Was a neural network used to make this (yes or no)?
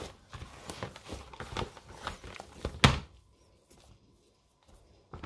no